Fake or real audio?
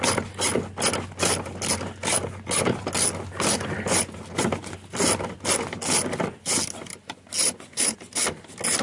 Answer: real